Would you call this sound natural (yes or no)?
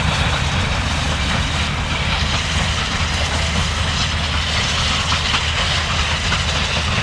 yes